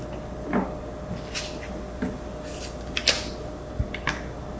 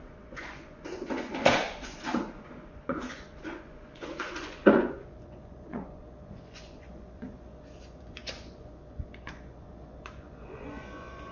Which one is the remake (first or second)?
second